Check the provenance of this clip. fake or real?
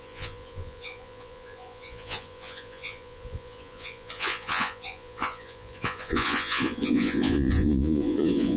fake